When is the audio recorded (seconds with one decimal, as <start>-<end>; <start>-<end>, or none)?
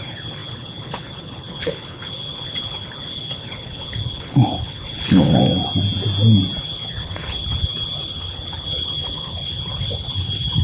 5.4-6.6